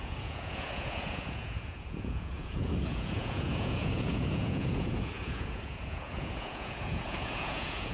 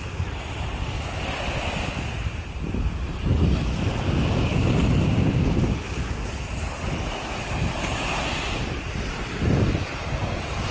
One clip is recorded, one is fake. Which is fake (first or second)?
first